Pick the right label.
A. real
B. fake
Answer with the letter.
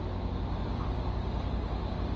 A